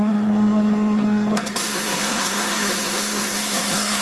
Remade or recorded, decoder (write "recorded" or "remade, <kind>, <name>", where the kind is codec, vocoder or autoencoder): remade, codec, SNAC